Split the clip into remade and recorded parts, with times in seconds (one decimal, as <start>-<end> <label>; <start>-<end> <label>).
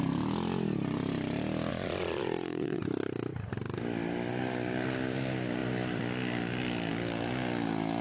0.0-1.7 recorded; 1.7-2.8 remade; 2.8-8.0 recorded